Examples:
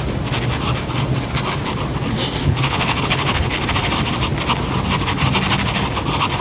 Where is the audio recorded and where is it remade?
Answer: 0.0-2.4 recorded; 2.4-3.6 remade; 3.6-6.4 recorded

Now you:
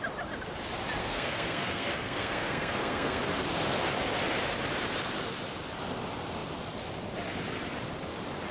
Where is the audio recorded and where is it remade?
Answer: 0.0-1.0 recorded; 1.0-3.2 remade; 3.2-8.5 recorded